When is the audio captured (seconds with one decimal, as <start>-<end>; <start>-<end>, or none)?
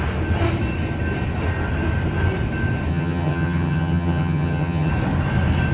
0.0-2.9; 4.9-5.7